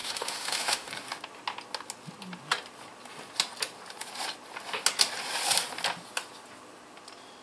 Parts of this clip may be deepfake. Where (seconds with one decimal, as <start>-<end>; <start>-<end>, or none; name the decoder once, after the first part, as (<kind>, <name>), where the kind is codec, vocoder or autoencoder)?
0.0-0.9 (autoencoder, DAC-VAE)